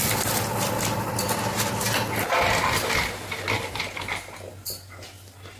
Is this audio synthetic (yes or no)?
no